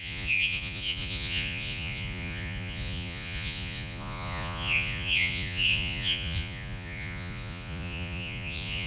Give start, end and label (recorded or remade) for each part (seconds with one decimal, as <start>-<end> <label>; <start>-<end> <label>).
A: 0.0-8.9 remade